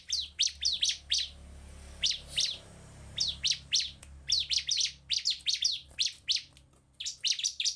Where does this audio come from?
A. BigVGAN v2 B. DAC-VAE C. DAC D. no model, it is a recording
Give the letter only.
D